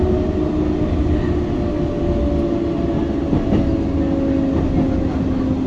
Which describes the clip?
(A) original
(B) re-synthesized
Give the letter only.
A